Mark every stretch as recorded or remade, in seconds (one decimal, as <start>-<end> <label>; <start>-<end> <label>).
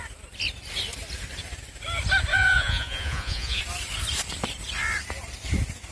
0.0-2.3 recorded; 2.3-3.6 remade; 3.6-5.9 recorded